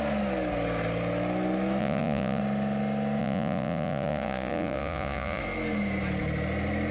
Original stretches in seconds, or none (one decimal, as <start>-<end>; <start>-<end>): 0.0-1.8; 2.4-3.2; 5.4-6.9